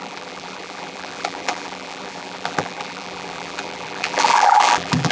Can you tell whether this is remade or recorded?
remade